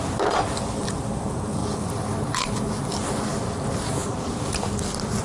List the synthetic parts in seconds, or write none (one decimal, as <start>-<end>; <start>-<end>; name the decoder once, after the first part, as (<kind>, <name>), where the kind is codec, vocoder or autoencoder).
none